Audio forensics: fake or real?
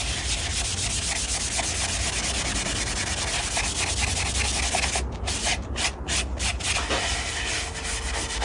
real